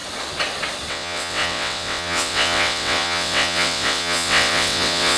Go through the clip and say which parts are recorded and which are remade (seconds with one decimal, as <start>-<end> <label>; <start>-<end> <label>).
0.0-0.9 recorded; 0.9-5.2 remade